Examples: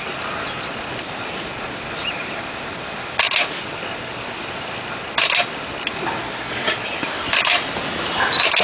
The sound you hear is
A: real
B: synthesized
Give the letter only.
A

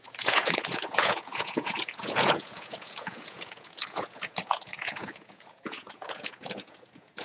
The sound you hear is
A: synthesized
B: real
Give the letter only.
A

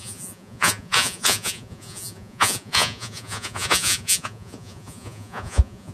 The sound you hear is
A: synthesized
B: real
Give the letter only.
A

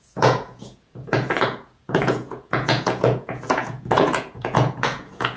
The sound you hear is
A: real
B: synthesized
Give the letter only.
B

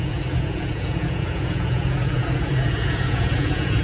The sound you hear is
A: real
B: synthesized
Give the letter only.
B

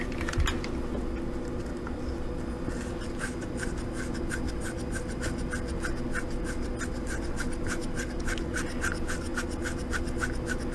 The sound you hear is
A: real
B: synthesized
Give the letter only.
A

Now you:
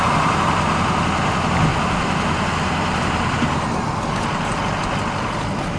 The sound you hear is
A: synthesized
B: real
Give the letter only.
B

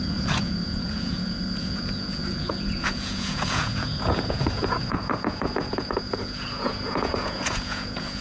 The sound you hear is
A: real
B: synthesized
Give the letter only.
B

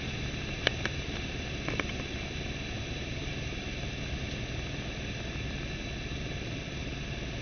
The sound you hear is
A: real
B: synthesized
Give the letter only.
A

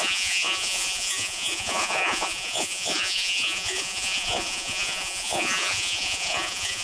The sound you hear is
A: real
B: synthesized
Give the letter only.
B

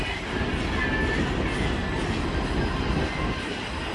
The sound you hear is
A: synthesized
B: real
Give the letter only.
B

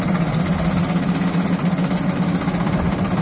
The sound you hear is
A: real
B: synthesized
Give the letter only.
A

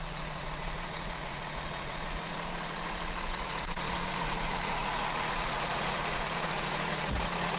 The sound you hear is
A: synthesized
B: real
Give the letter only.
A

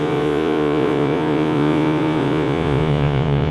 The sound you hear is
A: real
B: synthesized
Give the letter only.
B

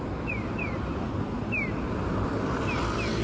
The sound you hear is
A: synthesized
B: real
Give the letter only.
B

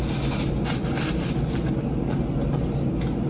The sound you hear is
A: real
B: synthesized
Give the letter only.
A